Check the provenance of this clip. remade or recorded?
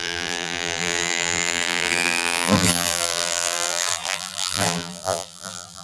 remade